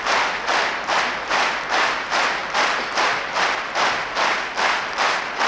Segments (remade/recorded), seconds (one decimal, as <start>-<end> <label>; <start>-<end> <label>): 0.0-5.5 recorded